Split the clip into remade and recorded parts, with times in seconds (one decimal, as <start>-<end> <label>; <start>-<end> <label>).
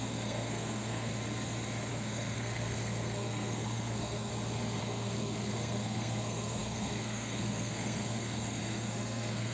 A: 0.0-1.1 remade; 1.1-1.9 recorded; 1.9-4.3 remade; 4.3-4.8 recorded; 4.8-9.5 remade